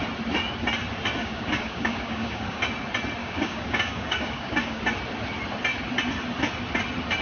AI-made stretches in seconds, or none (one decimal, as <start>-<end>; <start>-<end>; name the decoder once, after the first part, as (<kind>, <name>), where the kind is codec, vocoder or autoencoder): 1.2-2.6 (codec, DAC); 3.2-4.8